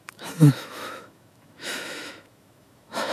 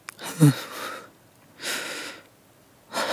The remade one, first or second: first